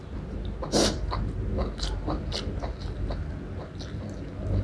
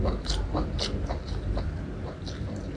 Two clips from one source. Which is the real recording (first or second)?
first